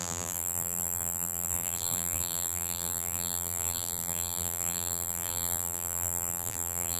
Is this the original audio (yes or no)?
no